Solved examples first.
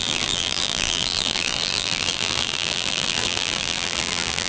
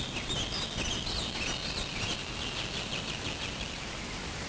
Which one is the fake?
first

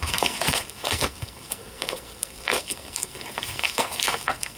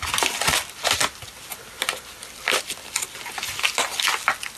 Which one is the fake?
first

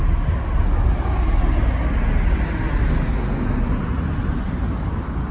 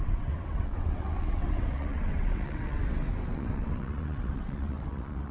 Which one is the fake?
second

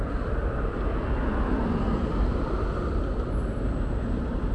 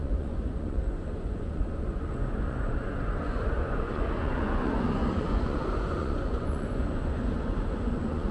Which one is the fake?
second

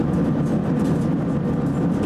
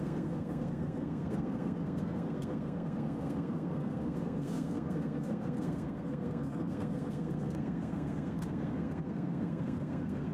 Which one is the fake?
second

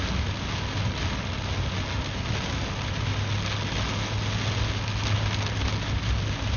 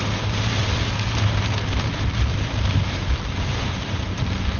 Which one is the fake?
second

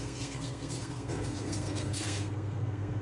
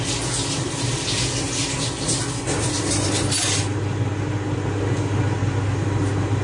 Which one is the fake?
first